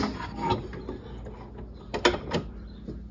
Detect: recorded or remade recorded